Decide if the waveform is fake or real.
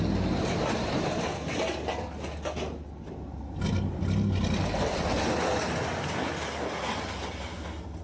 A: real